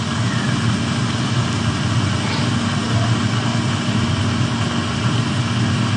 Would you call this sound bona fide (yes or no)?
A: yes